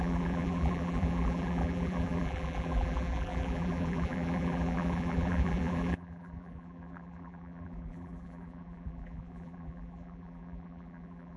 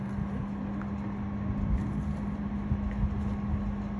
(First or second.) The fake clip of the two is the first